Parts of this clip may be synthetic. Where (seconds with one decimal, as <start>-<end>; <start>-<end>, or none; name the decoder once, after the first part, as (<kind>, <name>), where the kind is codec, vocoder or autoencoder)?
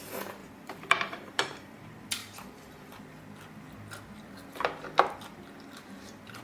0.4-1.8 (vocoder, BigVGAN v2); 2.2-3.0